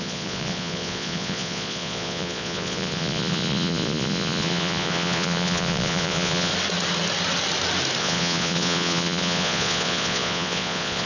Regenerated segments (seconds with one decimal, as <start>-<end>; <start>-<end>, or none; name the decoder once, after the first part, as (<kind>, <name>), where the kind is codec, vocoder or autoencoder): 0.0-6.5 (vocoder, Vocos); 8.0-11.1